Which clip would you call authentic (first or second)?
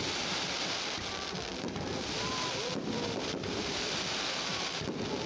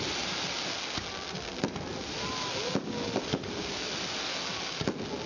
second